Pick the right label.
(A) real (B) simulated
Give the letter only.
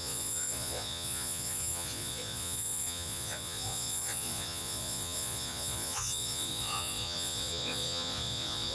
B